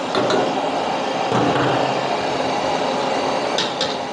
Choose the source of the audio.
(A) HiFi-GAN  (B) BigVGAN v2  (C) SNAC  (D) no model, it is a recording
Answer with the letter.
D